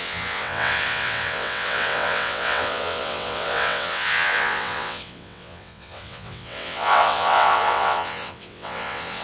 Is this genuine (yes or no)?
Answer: no